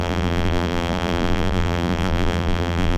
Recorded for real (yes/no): no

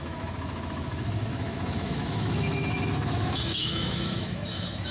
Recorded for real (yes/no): no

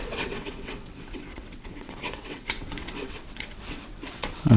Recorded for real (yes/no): no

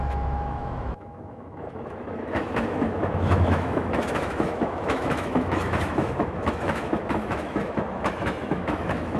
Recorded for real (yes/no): no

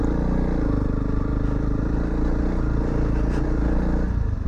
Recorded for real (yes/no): yes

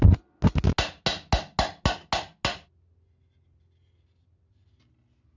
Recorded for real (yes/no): yes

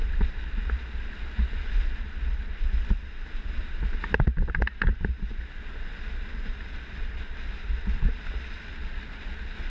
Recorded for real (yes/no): yes